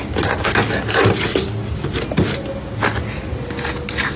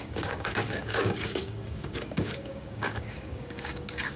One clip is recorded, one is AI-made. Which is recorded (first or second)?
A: first